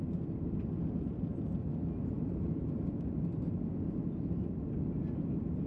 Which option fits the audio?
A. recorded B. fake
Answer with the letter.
A